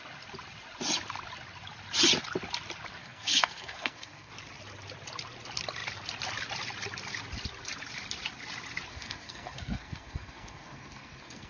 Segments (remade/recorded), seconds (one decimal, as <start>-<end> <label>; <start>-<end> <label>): 0.0-3.0 recorded; 3.0-4.3 remade; 4.3-8.9 recorded; 8.9-11.5 remade